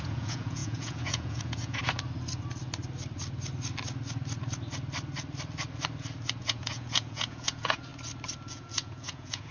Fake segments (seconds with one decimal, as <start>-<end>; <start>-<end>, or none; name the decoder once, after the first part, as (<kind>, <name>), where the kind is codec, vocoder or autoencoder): 0.0-1.8 (vocoder, Vocos); 6.4-7.9; 8.5-9.5